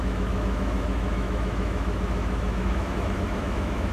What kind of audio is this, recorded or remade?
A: remade